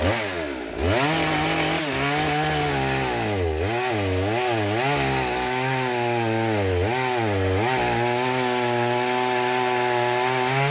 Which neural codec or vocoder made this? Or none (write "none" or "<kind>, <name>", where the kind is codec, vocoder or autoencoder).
none